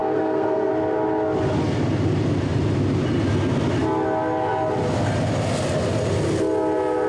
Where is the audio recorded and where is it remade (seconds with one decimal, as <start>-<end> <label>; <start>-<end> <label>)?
0.0-0.7 remade; 0.7-7.1 recorded